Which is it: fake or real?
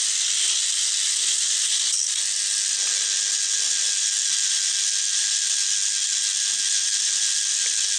real